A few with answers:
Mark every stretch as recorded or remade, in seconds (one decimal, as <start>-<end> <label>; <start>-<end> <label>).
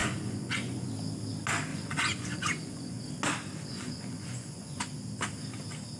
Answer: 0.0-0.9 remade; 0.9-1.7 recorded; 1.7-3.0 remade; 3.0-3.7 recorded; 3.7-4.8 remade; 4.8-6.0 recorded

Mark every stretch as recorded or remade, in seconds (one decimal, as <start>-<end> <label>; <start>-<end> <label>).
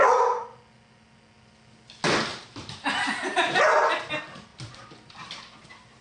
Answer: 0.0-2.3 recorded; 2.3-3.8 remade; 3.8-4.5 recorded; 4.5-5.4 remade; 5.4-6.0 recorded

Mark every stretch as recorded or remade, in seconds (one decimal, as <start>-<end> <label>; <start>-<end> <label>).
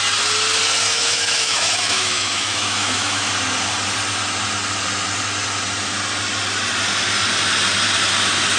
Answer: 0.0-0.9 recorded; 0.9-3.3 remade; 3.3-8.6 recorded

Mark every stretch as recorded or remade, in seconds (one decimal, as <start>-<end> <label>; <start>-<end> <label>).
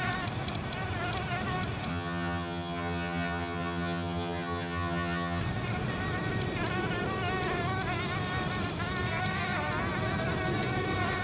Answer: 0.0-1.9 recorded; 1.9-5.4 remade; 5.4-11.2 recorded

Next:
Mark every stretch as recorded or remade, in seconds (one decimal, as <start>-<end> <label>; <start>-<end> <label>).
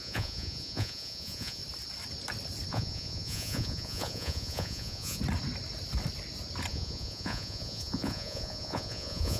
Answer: 0.0-1.6 remade; 1.6-2.7 recorded; 2.7-5.2 remade; 5.2-6.7 recorded; 6.7-9.4 remade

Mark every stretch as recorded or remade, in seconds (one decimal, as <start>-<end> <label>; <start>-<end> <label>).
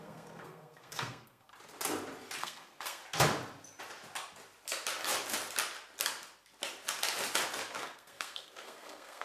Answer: 0.0-1.5 remade; 1.5-2.4 recorded; 2.4-3.0 remade; 3.0-7.8 recorded; 7.8-9.2 remade